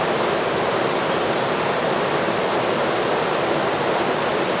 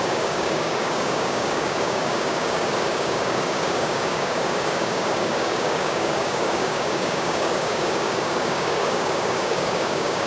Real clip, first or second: first